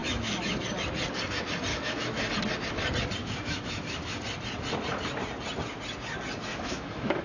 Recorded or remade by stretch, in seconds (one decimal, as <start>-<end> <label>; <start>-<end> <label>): 0.0-0.6 remade; 0.6-1.7 recorded; 1.7-2.3 remade; 2.3-3.2 recorded; 3.2-4.2 remade; 4.2-6.5 recorded; 6.5-7.2 remade